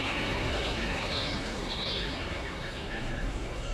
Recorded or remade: remade